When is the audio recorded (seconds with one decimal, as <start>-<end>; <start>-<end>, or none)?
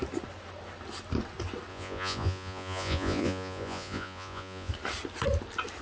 0.0-1.7; 4.7-5.8